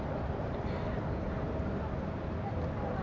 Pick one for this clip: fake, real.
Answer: real